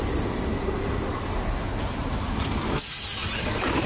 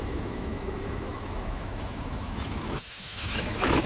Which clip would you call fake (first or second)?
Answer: second